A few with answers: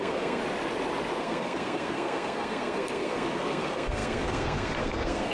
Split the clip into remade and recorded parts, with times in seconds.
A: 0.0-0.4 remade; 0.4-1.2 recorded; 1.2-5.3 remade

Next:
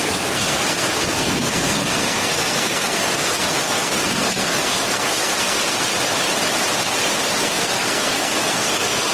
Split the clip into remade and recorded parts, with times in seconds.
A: 0.0-5.9 remade; 5.9-7.4 recorded; 7.4-9.1 remade